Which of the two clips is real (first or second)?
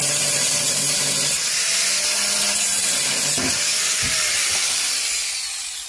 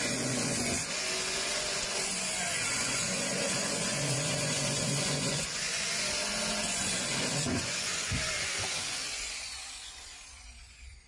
first